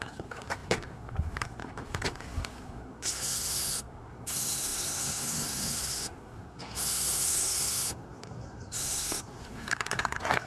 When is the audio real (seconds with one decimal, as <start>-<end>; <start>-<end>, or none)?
none